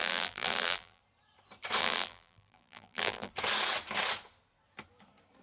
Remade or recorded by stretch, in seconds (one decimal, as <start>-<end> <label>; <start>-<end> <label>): 0.0-1.0 remade; 1.0-1.8 recorded; 1.8-3.3 remade; 3.3-5.4 recorded